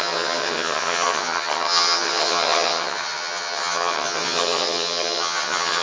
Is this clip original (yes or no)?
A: no